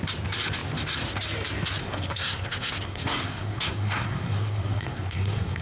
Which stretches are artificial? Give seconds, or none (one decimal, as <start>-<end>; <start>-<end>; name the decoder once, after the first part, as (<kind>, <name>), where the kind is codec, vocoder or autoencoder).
1.8-5.6 (codec, SNAC)